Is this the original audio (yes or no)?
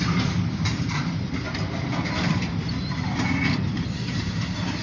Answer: no